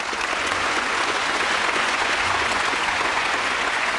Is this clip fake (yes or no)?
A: yes